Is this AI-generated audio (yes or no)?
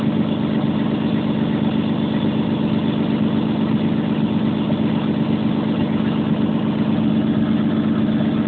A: no